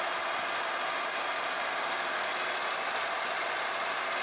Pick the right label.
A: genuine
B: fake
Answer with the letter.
A